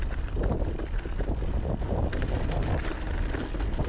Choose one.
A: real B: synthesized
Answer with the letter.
A